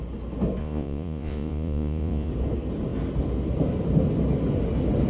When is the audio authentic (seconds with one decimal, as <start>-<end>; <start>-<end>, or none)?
0.0-0.6; 2.3-5.1